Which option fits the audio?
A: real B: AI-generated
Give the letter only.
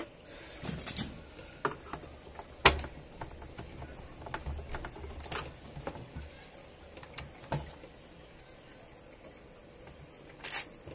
A